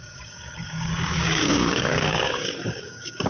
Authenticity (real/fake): fake